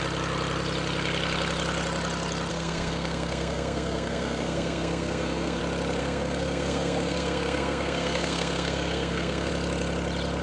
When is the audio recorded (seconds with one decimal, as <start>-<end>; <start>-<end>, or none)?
0.0-2.5; 5.6-6.0; 9.5-10.4